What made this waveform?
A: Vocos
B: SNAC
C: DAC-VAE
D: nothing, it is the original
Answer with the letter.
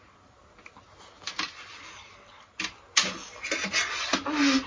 D